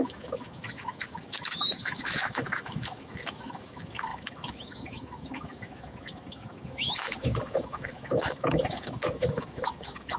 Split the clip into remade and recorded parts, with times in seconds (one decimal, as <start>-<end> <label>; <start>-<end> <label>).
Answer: 0.0-10.2 remade